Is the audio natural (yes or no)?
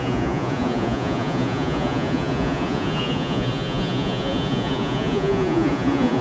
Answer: no